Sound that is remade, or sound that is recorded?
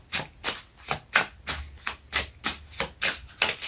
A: recorded